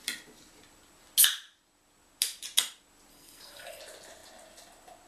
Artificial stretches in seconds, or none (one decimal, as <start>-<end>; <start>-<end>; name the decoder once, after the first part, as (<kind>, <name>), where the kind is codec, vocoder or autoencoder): 3.1-3.8 (codec, SNAC)